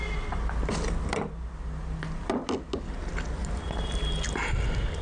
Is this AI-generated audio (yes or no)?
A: no